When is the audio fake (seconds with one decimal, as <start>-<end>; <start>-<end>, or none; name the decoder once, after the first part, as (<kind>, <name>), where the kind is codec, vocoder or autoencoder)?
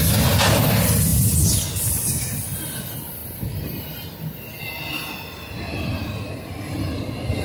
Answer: none